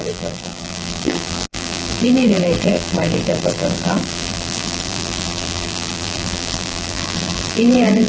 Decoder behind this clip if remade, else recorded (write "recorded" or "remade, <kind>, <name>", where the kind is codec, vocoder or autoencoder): remade, vocoder, BigVGAN v2